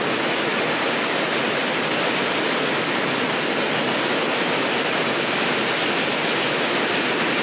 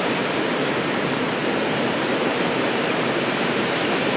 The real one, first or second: first